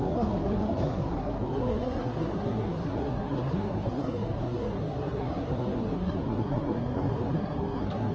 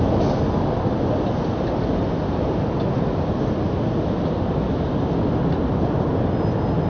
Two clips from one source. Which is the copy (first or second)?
first